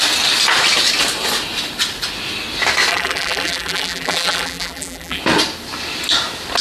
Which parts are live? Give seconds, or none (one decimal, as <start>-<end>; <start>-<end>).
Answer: 0.0-2.9; 5.2-6.6

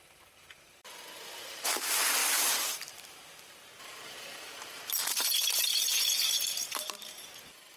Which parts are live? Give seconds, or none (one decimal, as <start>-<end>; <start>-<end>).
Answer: none

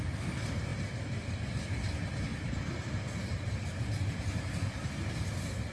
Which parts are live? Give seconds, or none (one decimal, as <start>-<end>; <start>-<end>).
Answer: 0.0-2.3; 4.3-5.7

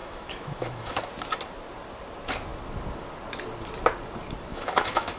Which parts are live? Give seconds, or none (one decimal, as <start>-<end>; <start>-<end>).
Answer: 1.1-4.5

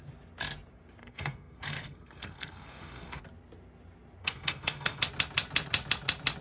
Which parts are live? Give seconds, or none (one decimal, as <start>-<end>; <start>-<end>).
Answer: 0.0-1.0; 3.2-4.2; 5.0-6.4

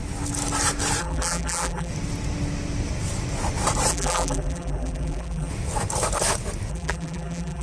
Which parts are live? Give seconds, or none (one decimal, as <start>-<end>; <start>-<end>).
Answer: 0.0-1.0; 1.9-3.9; 5.5-6.7

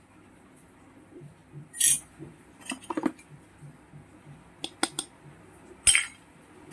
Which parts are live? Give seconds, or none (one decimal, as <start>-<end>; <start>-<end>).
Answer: 0.0-6.7